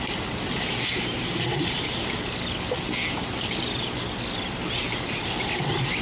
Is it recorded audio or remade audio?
recorded